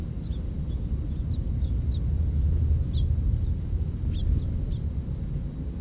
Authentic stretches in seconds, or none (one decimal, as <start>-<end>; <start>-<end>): 0.0-5.8